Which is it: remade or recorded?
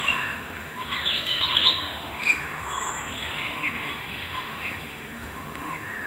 remade